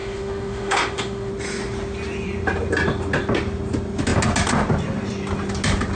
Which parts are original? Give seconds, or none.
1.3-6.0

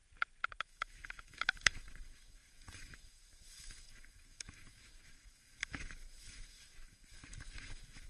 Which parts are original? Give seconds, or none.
0.0-0.6

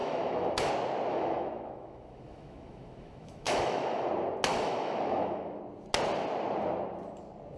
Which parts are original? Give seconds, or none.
0.7-1.1; 4.1-4.5; 5.6-7.6

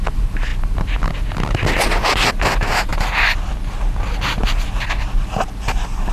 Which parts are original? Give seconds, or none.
0.0-6.1

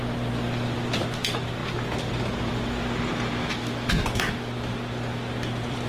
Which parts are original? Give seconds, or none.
0.0-3.4; 4.5-5.9

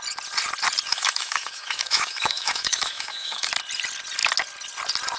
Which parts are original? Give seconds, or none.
0.0-0.9; 3.5-5.2